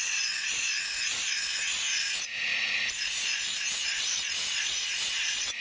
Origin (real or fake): fake